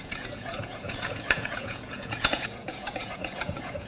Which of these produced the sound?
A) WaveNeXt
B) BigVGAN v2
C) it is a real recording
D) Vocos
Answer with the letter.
D